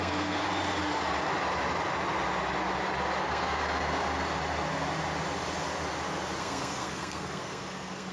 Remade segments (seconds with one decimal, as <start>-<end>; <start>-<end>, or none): 0.0-0.4; 3.2-3.6; 6.4-8.1